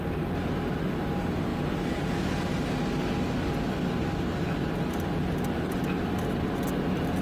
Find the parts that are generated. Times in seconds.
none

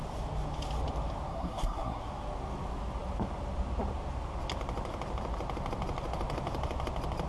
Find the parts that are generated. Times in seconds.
1.3-2.0 (codec, SNAC)

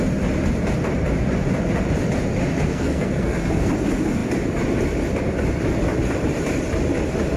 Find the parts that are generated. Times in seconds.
2.7-3.7 (codec, SNAC)

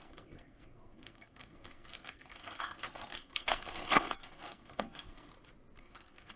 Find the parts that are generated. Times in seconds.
0.0-5.3 (codec, SNAC); 5.8-6.4

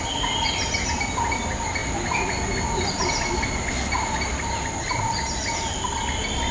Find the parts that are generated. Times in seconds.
none

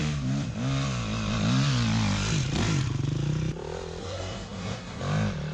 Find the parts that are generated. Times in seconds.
4.0-5.0 (codec, SNAC)

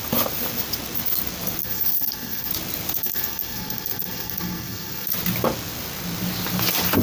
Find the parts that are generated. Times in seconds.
1.6-2.5 (codec, SNAC); 3.0-5.1